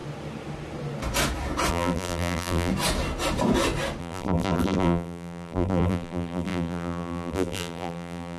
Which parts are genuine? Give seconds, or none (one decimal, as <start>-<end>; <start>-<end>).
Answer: 0.0-1.7; 2.7-4.0